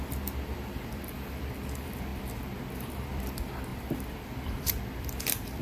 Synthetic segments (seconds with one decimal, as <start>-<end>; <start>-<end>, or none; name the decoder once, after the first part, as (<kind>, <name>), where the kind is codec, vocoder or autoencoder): 0.0-5.6 (vocoder, BigVGAN v2)